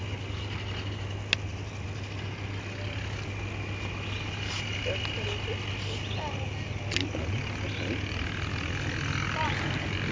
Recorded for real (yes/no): yes